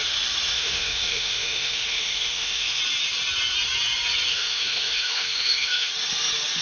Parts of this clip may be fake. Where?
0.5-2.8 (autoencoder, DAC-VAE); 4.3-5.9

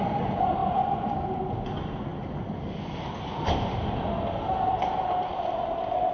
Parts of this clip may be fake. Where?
none